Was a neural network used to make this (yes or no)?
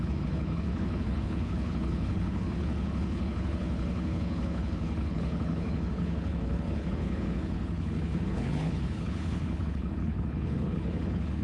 yes